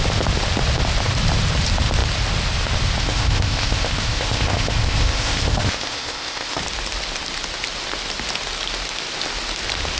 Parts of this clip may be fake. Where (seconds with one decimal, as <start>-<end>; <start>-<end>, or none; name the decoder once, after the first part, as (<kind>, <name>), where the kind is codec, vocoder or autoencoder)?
3.0-6.6 (codec, ZipCodec)